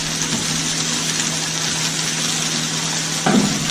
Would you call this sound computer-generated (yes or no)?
no